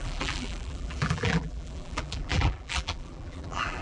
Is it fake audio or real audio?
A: fake